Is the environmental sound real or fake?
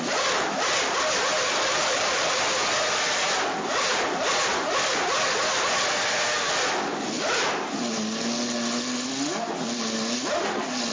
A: real